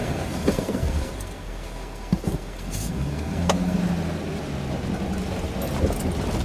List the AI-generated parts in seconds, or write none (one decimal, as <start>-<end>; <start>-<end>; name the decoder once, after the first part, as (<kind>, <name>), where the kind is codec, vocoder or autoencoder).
0.0-3.8 (codec, SNAC)